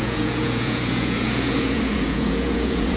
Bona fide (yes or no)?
no